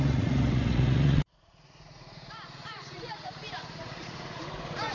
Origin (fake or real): fake